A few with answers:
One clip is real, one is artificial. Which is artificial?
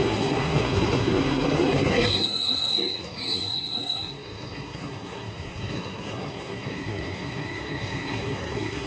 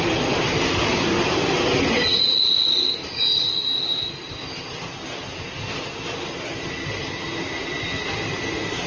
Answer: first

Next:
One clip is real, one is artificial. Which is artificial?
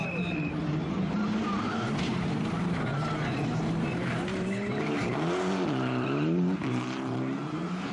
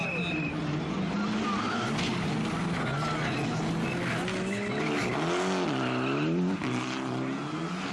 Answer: first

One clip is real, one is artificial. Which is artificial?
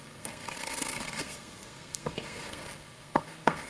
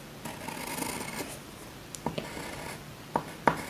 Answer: first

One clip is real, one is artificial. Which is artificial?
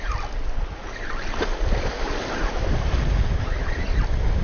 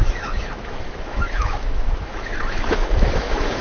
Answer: second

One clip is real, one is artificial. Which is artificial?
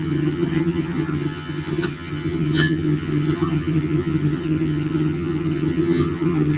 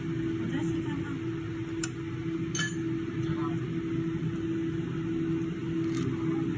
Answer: first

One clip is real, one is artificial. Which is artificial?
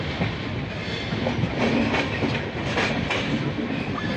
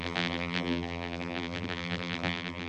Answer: second